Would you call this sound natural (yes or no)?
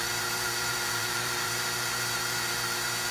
no